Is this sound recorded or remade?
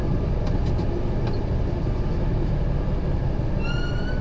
recorded